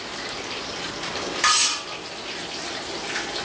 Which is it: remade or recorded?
recorded